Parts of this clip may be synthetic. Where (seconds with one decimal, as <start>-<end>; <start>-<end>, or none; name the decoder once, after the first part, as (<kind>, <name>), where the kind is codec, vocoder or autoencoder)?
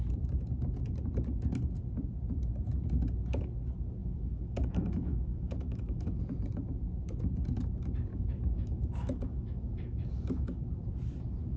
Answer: 4.0-6.2 (autoencoder, DAC-VAE); 8.1-10.6